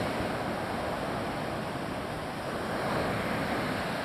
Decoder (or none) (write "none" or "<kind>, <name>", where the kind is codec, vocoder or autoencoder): none